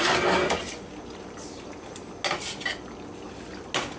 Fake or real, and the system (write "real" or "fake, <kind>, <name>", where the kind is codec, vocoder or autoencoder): real